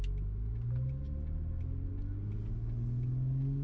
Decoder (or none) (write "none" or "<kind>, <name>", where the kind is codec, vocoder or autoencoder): none